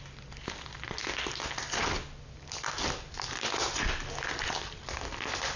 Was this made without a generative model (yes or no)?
yes